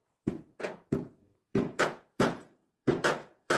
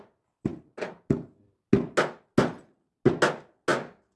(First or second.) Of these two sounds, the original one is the second